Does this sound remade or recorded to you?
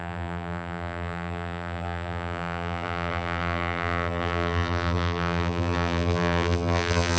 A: remade